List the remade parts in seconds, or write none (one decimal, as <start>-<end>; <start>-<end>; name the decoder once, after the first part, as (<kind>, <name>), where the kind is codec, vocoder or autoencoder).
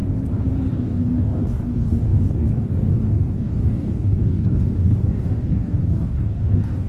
0.7-6.9 (codec, DAC)